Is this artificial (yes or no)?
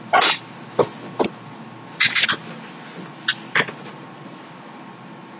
no